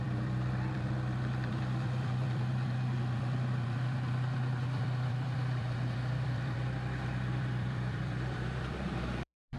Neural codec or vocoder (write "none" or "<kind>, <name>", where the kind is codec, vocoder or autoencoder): vocoder, BigVGAN v2